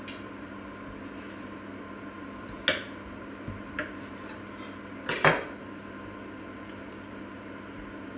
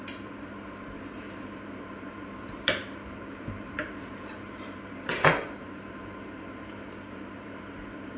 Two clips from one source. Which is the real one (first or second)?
first